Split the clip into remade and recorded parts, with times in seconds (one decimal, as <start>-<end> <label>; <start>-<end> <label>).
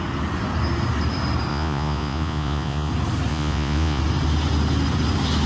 0.0-1.5 recorded; 1.5-2.9 remade; 2.9-3.3 recorded; 3.3-4.0 remade; 4.0-5.5 recorded